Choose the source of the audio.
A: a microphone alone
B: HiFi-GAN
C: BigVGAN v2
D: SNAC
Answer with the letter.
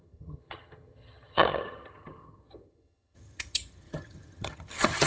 B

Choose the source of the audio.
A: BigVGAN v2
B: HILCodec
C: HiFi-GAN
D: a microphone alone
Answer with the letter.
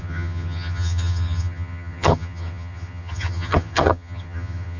C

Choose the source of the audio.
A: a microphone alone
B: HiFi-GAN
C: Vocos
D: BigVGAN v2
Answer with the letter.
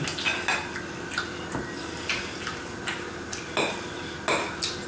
A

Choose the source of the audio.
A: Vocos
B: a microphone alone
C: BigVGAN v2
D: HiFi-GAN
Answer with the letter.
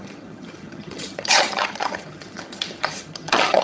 D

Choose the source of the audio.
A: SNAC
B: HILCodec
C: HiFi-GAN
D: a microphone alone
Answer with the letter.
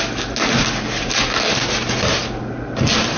D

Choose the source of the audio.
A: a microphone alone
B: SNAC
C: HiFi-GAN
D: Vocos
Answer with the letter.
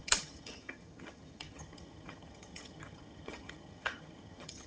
C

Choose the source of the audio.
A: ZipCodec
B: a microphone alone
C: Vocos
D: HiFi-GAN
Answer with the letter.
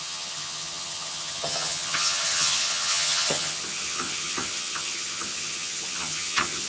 D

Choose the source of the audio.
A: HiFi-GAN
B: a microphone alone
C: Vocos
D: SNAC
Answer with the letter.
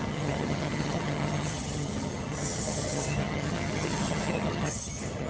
A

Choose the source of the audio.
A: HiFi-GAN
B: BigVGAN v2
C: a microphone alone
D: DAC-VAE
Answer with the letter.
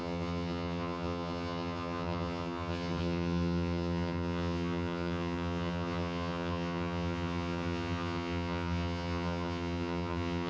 A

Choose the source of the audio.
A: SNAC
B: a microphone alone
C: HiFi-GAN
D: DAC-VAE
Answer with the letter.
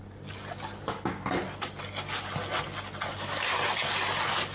B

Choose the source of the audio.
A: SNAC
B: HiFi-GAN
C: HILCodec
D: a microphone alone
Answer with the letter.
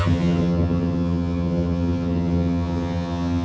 B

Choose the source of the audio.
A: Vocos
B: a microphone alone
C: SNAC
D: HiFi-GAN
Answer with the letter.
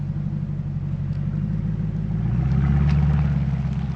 B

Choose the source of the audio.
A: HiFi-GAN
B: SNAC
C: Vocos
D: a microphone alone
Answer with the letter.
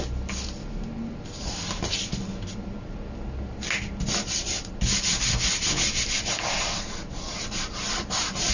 D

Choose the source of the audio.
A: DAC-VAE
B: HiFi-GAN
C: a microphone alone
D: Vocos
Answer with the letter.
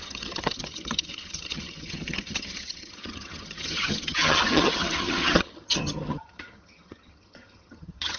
B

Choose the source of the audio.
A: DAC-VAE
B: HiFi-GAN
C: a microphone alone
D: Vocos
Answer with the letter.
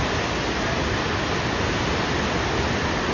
C